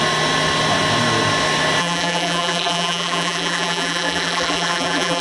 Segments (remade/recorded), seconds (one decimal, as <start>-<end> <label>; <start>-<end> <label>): 0.0-1.8 recorded; 1.8-5.2 remade

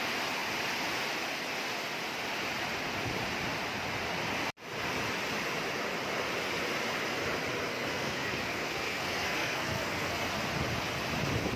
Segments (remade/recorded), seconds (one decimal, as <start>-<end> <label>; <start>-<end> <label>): 0.0-7.7 recorded; 7.7-10.3 remade; 10.3-11.6 recorded

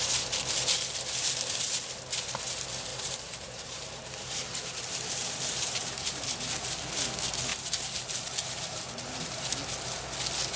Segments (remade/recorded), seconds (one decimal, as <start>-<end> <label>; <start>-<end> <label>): 0.0-2.9 recorded; 2.9-6.2 remade; 6.2-7.5 recorded; 7.5-9.5 remade; 9.5-10.6 recorded

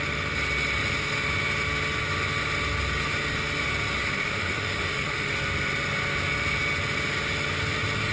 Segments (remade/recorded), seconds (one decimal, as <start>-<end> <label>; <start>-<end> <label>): 0.0-4.1 recorded; 4.1-5.3 remade; 5.3-8.1 recorded

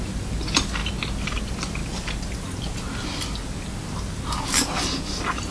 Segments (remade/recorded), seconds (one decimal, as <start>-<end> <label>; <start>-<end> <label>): 0.0-5.5 recorded